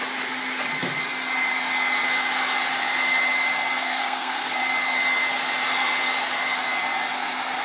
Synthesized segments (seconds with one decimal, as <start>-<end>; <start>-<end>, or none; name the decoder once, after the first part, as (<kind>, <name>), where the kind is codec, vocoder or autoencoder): 3.8-4.6 (codec, SNAC)